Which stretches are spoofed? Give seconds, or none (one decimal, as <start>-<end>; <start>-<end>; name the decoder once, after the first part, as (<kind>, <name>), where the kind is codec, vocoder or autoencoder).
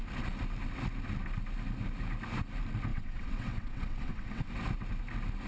2.9-4.5 (vocoder, WaveNeXt)